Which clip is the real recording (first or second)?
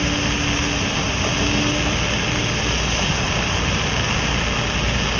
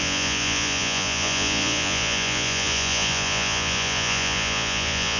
first